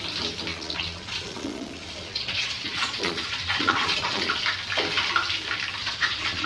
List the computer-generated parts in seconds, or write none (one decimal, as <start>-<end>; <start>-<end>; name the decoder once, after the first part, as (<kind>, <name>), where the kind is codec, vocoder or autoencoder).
0.5-4.4 (vocoder, Vocos); 5.8-6.5